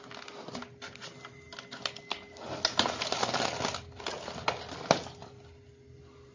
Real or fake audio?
real